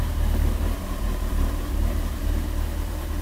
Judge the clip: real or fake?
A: fake